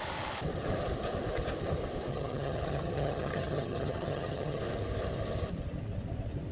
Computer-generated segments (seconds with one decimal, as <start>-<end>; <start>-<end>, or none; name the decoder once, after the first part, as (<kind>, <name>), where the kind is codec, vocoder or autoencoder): 2.1-4.6 (vocoder, HiFi-GAN)